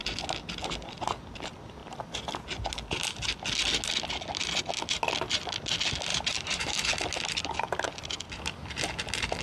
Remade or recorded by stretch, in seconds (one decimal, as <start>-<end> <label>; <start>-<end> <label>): 0.0-6.1 recorded; 6.1-6.9 remade; 6.9-9.4 recorded